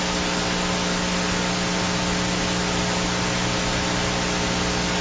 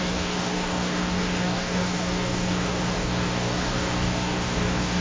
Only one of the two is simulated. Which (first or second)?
second